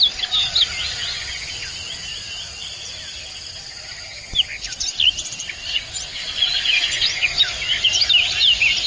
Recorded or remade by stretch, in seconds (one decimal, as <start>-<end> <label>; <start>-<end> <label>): 0.0-1.0 recorded; 1.0-1.7 remade; 1.7-6.2 recorded; 6.2-7.4 remade; 7.4-8.9 recorded